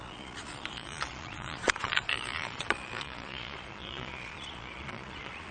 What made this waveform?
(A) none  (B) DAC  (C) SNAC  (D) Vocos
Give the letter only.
D